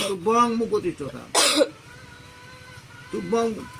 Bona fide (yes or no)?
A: yes